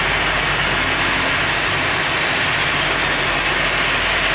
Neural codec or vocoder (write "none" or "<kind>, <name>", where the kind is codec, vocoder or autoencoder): none